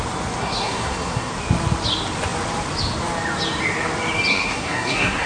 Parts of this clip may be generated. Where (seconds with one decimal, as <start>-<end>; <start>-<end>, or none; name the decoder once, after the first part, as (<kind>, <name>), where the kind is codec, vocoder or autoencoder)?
0.4-1.3 (codec, SNAC); 4.3-5.3